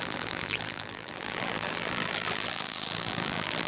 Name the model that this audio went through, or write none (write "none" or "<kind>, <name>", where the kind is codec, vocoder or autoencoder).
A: vocoder, BigVGAN v2